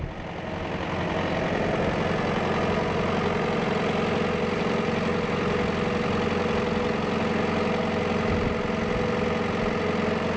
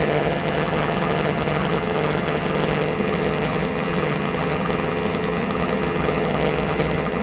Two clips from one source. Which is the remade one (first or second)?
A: second